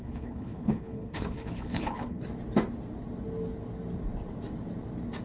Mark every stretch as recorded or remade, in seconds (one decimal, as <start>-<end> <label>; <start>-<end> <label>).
0.0-2.2 remade; 2.2-5.2 recorded